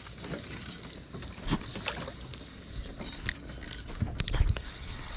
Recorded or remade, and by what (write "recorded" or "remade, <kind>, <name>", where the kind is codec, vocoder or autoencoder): recorded